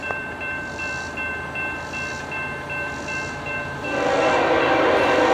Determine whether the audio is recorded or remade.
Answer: remade